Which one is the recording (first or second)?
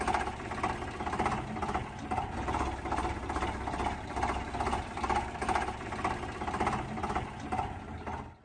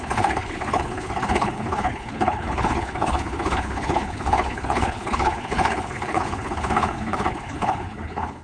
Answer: first